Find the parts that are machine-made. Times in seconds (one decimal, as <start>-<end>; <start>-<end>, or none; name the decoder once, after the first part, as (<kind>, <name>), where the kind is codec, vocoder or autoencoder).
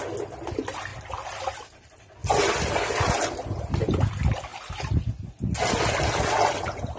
none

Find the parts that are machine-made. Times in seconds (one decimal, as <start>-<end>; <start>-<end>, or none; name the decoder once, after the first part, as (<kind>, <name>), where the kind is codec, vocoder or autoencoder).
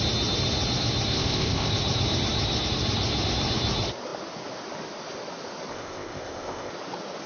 1.1-1.7 (codec, ZipCodec); 5.7-6.7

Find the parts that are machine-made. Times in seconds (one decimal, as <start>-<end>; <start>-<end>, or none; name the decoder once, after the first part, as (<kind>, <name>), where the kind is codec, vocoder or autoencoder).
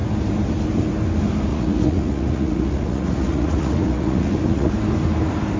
1.5-4.7 (vocoder, Vocos)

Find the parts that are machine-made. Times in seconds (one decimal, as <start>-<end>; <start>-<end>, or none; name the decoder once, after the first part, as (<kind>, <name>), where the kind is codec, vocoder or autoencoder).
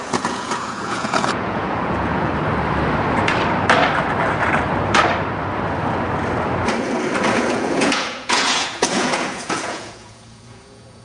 0.0-2.3 (vocoder, Vocos); 7.3-11.0